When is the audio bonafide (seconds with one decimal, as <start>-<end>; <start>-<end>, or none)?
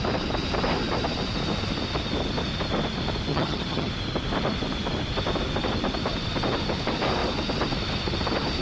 0.0-3.3; 3.9-8.6